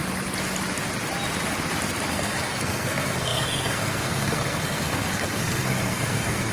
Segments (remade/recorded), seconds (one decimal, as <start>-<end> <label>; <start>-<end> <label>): 0.0-2.1 recorded; 2.1-6.5 remade